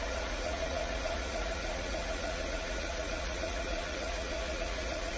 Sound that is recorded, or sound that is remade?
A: remade